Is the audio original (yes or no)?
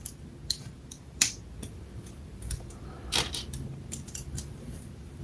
no